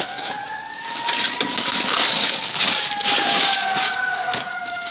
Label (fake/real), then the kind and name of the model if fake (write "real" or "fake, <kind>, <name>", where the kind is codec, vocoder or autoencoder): fake, codec, DAC